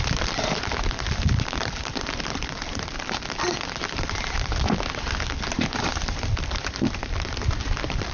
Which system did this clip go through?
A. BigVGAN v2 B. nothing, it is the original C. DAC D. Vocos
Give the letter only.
A